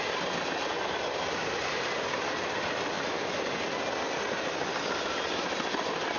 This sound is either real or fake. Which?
real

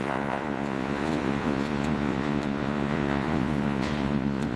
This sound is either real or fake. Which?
fake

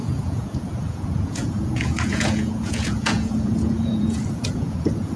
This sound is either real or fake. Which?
fake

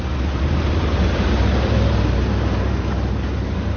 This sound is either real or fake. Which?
fake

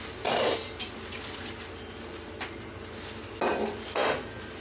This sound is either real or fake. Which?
real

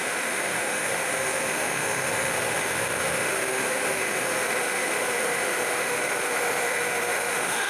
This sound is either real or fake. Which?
fake